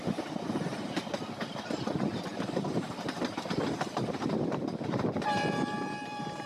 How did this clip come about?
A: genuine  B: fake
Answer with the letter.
B